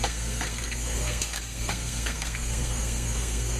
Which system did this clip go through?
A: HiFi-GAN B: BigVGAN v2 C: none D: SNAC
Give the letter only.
D